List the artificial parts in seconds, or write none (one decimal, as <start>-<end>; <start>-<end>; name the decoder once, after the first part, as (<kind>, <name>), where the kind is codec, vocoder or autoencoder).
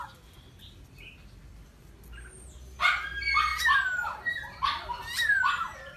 none